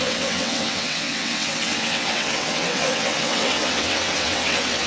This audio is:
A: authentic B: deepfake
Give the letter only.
B